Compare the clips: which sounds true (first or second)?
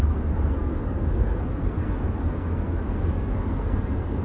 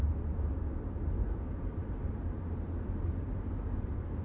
second